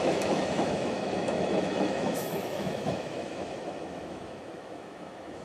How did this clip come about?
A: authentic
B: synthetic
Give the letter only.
B